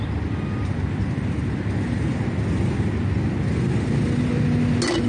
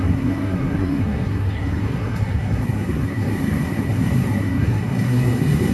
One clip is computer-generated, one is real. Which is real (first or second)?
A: first